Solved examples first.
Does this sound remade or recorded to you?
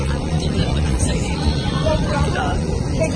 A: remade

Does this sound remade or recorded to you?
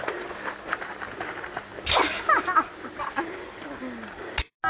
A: recorded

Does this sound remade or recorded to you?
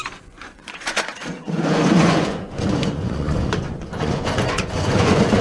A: remade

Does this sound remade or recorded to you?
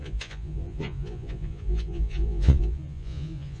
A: remade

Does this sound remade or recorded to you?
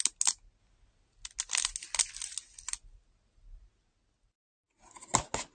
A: recorded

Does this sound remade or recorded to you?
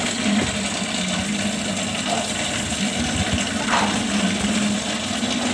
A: recorded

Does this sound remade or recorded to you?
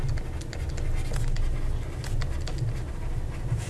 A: recorded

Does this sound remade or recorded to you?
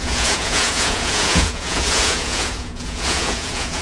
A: remade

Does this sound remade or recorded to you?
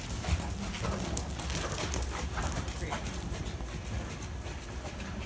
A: recorded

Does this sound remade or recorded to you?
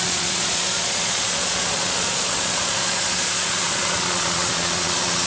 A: remade